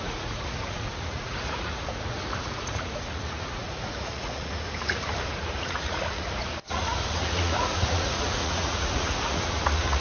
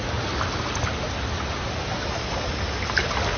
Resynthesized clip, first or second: first